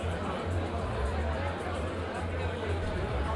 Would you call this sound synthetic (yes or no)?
no